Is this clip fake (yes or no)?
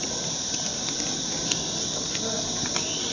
no